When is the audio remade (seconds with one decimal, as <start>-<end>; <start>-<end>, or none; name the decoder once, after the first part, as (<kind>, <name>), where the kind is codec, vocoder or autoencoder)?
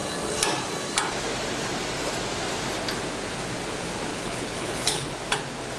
4.1-5.1 (codec, HILCodec)